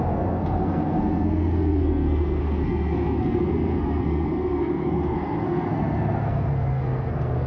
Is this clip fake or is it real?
fake